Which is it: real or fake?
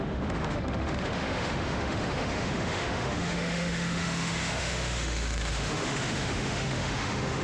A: fake